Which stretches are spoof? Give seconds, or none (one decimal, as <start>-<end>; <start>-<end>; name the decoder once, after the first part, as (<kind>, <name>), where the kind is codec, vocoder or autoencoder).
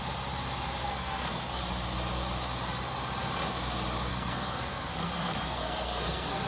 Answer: 0.8-1.6 (codec, SNAC); 4.1-6.5